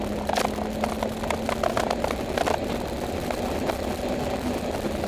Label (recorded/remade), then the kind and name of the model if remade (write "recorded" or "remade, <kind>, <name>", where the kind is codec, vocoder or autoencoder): recorded